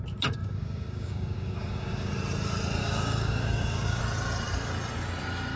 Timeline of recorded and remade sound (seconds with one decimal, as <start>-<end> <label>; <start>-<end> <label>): 0.0-0.4 recorded; 0.4-2.1 remade; 2.1-2.8 recorded; 2.8-4.0 remade; 4.0-5.6 recorded